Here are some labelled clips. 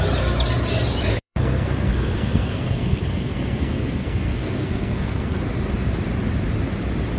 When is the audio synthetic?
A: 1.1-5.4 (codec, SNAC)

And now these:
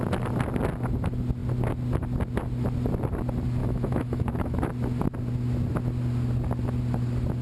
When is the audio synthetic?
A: 3.6-4.6 (autoencoder, DAC-VAE)

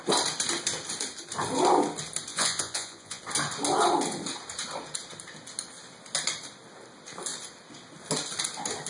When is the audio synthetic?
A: 2.3-3.2 (vocoder, Vocos)

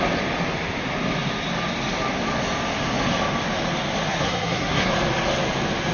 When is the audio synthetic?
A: 4.1-4.9 (codec, SNAC)

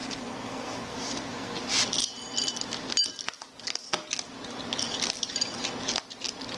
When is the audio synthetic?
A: 0.0-1.6 (codec, SNAC)

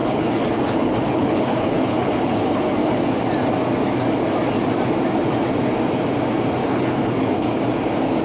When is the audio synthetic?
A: 0.0-3.0 (codec, HILCodec); 6.6-7.6

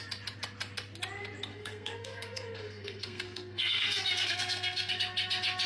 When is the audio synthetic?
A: 1.5-4.9 (codec, SNAC)

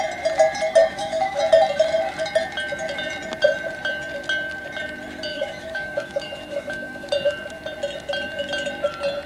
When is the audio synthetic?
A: 0.8-1.4 (autoencoder, DAC-VAE); 5.3-7.1